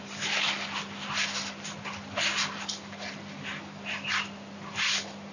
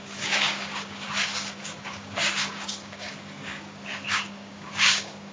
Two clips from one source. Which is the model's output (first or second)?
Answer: second